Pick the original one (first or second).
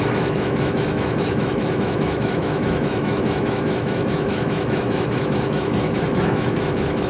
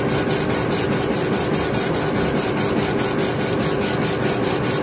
second